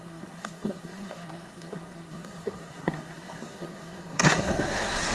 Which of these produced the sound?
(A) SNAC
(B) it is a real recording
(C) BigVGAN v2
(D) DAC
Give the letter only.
A